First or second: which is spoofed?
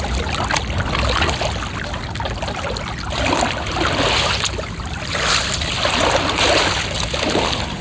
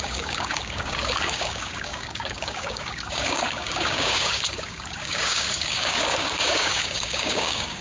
second